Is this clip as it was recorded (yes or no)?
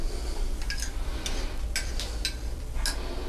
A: yes